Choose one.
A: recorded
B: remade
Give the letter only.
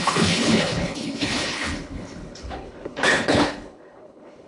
B